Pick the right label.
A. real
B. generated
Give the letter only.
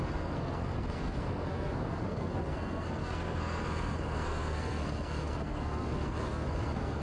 B